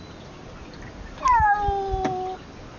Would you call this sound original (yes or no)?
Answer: yes